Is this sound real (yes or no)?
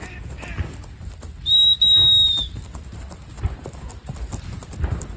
yes